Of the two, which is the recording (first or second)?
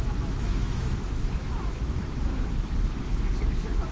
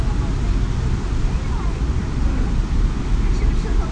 second